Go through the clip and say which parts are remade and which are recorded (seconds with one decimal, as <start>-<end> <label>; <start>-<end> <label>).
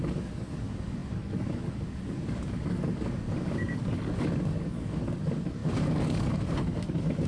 0.0-7.3 remade